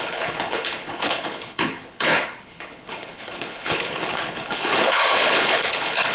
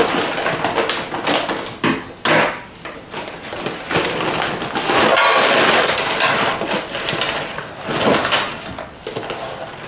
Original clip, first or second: second